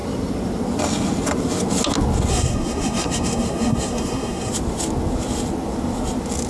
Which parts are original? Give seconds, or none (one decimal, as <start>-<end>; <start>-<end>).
0.0-2.3; 4.5-6.5